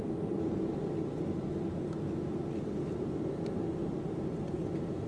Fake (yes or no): no